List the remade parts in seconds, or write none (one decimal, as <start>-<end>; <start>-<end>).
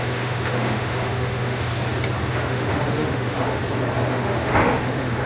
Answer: 0.0-1.7; 2.3-3.6; 4.1-5.3